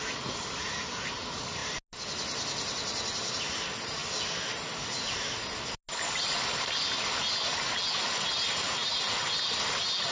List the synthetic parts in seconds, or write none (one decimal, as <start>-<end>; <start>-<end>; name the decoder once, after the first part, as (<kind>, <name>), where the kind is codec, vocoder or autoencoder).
none